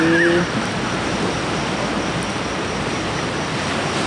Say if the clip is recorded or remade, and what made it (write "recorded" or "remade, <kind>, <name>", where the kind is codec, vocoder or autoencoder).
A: recorded